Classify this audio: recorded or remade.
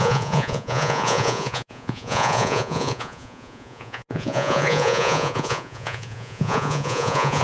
remade